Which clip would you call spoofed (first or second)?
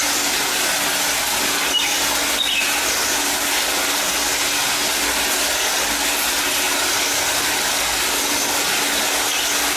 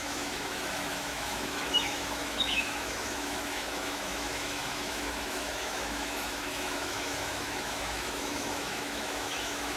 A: second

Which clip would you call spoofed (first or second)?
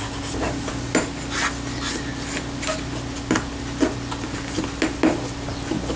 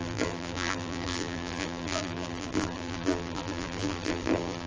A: second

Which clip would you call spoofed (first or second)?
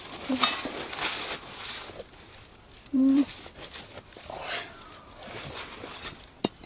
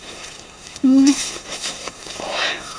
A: second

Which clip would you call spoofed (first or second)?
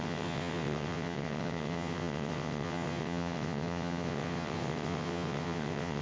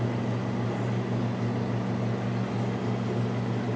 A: first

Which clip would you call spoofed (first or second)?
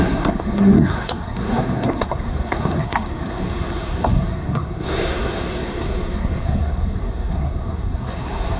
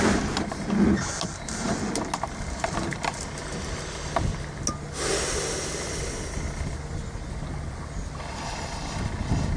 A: first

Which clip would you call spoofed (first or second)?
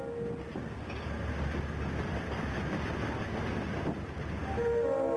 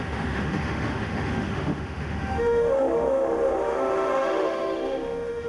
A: second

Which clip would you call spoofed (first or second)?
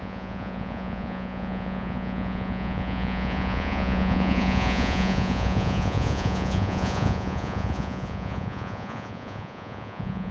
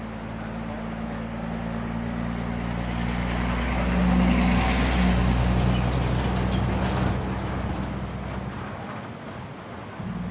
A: first